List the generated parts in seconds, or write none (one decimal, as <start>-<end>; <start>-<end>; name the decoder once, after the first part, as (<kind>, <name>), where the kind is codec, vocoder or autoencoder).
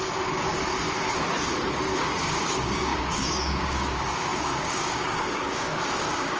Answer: 0.0-0.5 (codec, DAC); 2.1-6.4